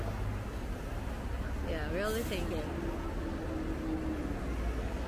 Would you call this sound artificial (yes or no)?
no